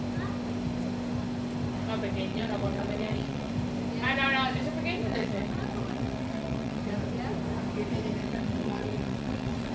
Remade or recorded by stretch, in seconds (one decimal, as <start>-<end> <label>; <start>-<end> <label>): 0.0-2.3 recorded; 2.3-3.5 remade; 3.5-5.1 recorded; 5.1-6.8 remade; 6.8-8.2 recorded; 8.2-9.7 remade